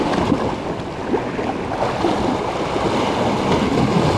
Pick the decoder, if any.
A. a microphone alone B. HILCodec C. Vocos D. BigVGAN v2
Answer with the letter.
A